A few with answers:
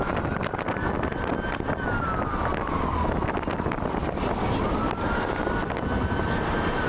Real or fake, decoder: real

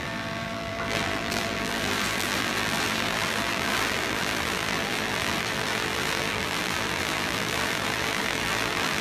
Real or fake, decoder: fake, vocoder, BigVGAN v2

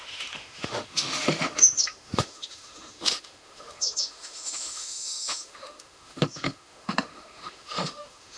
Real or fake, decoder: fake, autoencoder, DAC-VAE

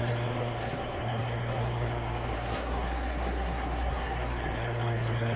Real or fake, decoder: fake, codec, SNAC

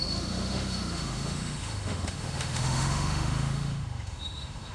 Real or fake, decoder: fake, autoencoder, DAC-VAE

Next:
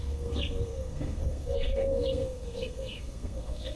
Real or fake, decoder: fake, codec, SNAC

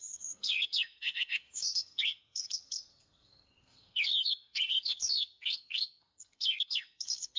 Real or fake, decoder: fake, codec, SNAC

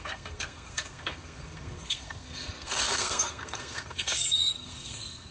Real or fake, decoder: fake, codec, SNAC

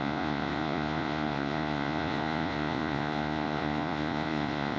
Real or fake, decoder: fake, vocoder, Vocos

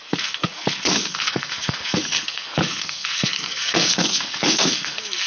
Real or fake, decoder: fake, codec, SNAC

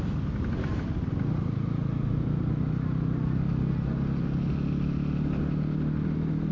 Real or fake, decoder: real